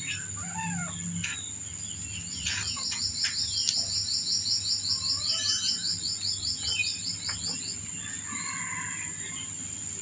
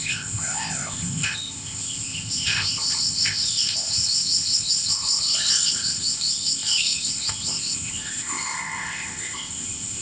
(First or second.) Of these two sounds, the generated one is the second